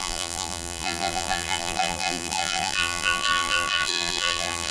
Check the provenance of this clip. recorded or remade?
remade